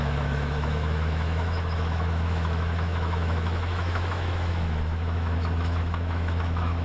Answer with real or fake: fake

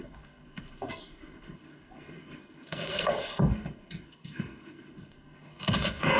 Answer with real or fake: fake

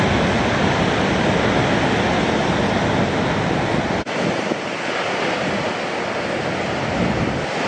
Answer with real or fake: real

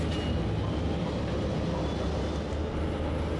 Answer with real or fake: real